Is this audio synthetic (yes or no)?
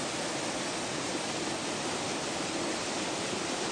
no